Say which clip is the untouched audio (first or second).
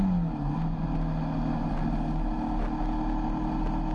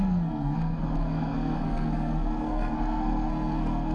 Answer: first